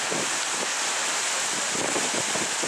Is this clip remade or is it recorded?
recorded